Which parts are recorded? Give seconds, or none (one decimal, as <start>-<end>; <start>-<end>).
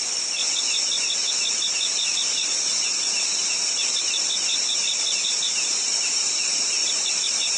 0.0-6.8